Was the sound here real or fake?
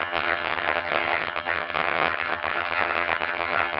fake